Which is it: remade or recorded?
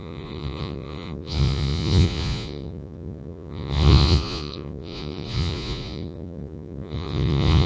remade